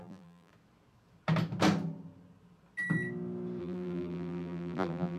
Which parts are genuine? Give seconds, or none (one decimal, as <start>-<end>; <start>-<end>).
0.5-3.6